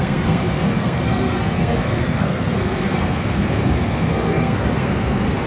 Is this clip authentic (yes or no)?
no